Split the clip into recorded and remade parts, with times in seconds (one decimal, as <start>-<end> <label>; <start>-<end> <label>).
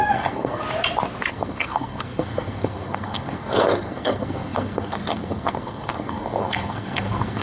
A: 0.0-0.6 remade; 0.6-1.3 recorded; 1.3-7.4 remade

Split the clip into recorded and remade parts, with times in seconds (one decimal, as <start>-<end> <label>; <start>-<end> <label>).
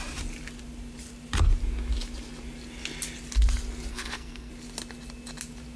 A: 0.0-3.9 recorded; 3.9-4.5 remade; 4.5-5.8 recorded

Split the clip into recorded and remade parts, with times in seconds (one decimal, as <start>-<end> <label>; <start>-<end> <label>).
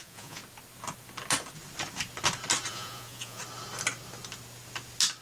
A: 0.0-0.4 remade; 0.4-2.7 recorded; 2.7-3.4 remade; 3.4-5.2 recorded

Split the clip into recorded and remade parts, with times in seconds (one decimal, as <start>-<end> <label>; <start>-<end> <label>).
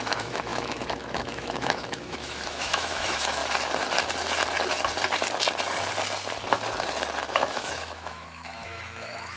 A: 0.0-3.4 remade; 3.4-7.2 recorded; 7.2-9.4 remade